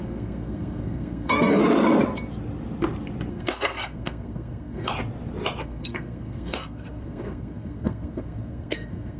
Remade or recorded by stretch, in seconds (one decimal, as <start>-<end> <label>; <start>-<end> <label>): 0.0-1.6 remade; 1.6-3.3 recorded; 3.3-4.9 remade; 4.9-5.6 recorded; 5.6-9.2 remade